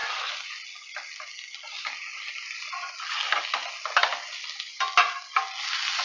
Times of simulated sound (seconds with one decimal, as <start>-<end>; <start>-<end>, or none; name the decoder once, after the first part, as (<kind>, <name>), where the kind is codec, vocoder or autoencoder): none